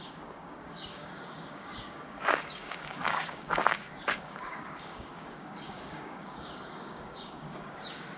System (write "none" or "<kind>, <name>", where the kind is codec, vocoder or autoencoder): codec, DAC